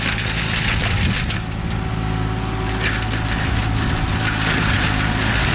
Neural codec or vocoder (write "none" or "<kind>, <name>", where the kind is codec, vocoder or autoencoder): none